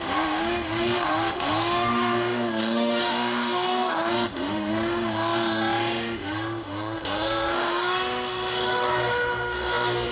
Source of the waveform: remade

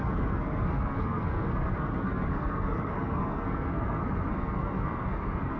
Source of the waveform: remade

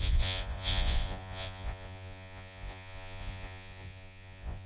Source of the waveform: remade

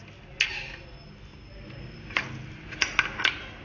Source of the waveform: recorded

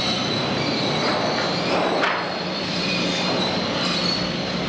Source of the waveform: remade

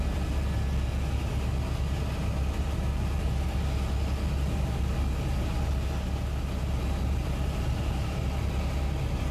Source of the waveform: recorded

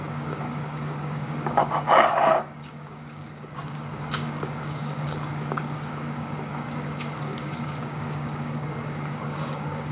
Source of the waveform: remade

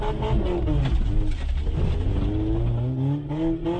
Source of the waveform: recorded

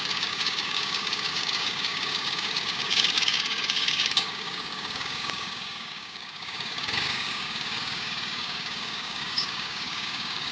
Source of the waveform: remade